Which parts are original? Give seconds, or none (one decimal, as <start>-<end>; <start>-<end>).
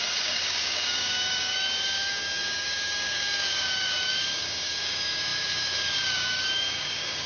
none